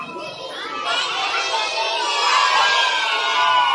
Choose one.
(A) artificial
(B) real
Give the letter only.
B